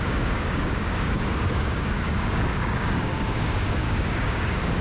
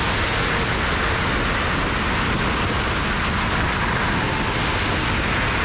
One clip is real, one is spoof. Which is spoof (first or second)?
first